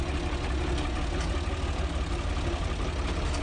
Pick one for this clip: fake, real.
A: real